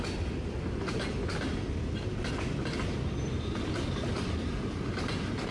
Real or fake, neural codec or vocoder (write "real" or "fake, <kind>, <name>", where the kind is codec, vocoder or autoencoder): real